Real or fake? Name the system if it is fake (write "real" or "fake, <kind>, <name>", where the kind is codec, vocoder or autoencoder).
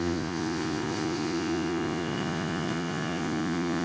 fake, vocoder, Vocos